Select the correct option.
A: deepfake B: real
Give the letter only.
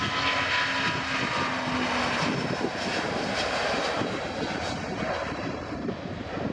B